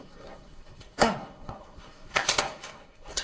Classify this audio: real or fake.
fake